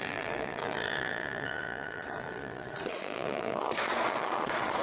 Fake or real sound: fake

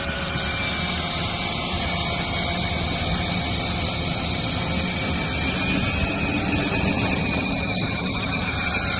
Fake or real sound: real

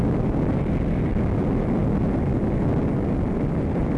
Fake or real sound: real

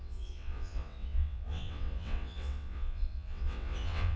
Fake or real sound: fake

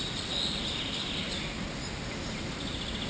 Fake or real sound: real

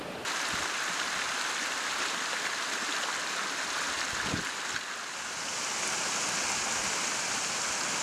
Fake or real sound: real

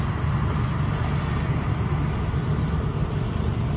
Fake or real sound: real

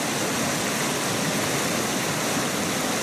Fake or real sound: real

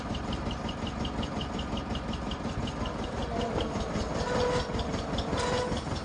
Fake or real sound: fake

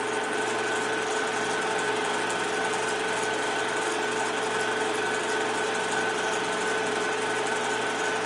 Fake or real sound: real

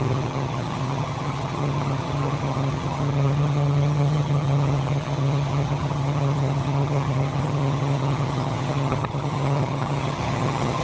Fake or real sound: fake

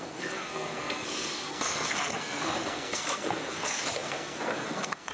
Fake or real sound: fake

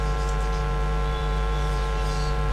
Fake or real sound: fake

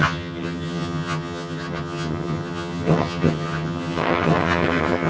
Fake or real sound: fake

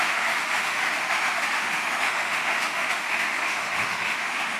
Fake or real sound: fake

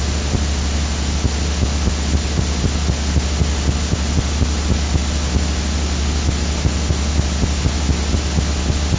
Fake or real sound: real